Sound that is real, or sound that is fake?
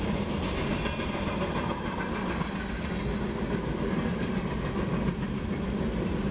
real